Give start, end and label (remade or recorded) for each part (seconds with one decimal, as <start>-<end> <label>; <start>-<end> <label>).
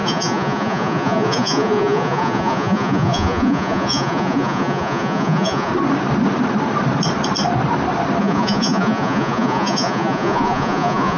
0.0-5.7 remade; 5.7-8.2 recorded; 8.2-11.2 remade